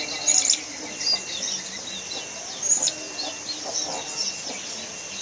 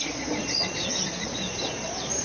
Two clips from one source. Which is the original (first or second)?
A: first